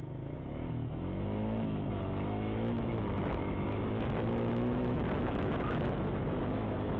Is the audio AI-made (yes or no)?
yes